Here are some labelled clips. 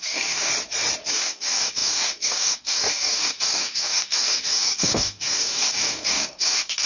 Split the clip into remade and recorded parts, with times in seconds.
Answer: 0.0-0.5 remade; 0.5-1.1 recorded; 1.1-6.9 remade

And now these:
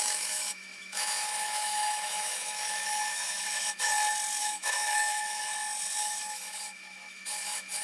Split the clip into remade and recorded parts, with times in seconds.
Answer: 0.0-3.9 remade; 3.9-4.4 recorded; 4.4-5.5 remade; 5.5-6.0 recorded; 6.0-7.8 remade

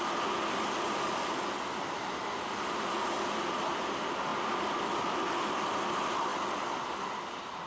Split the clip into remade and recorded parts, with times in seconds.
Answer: 0.0-7.7 recorded

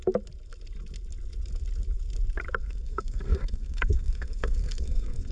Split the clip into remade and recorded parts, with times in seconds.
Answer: 0.0-2.6 recorded; 2.6-5.3 remade

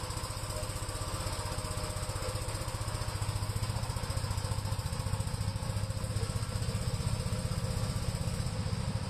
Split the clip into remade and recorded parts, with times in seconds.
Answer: 0.0-9.1 recorded

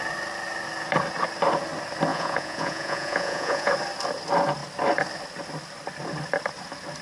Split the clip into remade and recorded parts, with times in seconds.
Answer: 0.0-2.1 recorded; 2.1-3.7 remade; 3.7-7.0 recorded